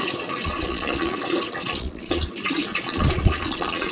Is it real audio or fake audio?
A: fake